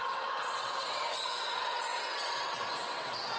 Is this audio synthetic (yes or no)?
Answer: yes